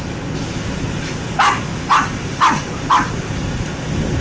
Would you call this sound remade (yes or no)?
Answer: no